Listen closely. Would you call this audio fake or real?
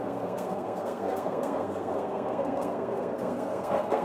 fake